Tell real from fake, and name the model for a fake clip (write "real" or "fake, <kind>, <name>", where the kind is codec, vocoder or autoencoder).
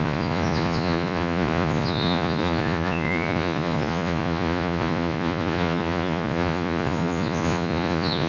fake, vocoder, Vocos